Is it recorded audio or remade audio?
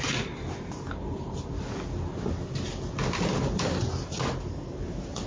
recorded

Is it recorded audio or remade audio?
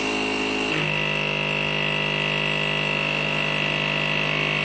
recorded